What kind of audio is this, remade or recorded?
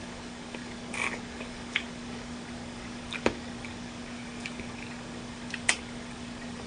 remade